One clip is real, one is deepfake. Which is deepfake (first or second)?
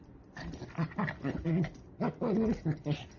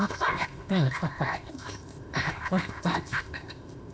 second